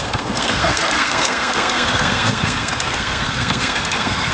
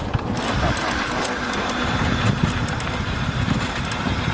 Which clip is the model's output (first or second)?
first